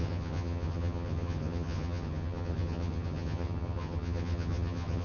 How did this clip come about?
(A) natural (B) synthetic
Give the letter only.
B